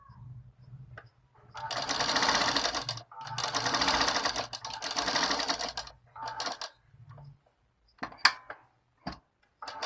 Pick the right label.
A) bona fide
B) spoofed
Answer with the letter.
A